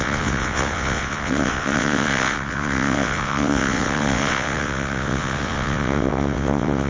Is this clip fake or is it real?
fake